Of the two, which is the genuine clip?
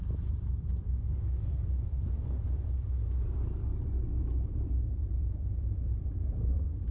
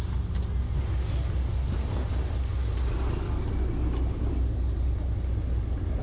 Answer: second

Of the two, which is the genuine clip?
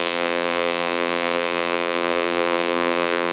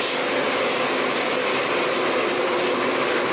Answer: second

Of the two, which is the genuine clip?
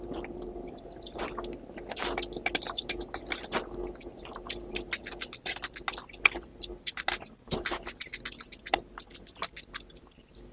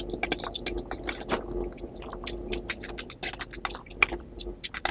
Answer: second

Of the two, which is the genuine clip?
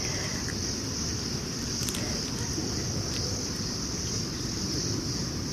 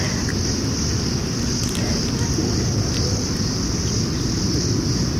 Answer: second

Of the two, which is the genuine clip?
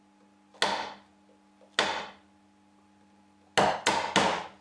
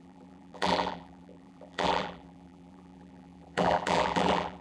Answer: first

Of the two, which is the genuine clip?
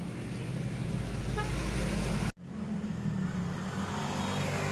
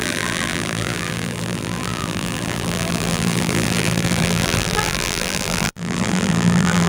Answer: first